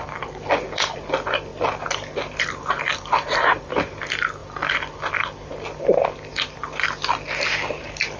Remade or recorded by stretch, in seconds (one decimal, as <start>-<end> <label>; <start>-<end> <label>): 0.0-1.5 remade; 1.5-2.6 recorded; 2.6-6.3 remade; 6.3-8.2 recorded